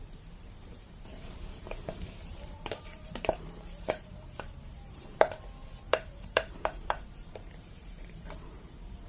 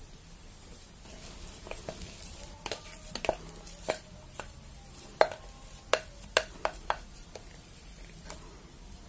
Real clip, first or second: second